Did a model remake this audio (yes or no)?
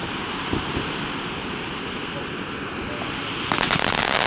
no